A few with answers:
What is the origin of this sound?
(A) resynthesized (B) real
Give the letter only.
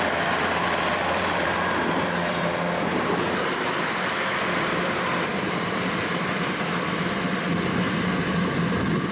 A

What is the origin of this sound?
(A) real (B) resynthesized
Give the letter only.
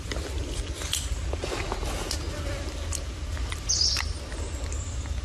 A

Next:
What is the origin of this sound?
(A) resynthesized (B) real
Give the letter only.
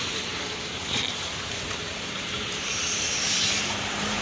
A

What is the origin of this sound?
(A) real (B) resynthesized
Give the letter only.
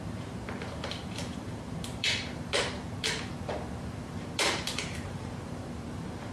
B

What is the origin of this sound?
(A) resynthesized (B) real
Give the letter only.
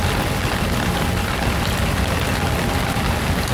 B